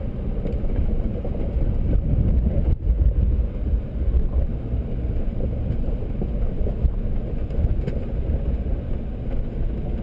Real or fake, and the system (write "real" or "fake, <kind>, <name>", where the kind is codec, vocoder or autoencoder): real